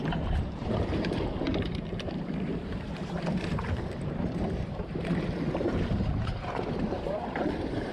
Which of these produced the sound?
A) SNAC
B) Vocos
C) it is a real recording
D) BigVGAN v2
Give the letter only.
D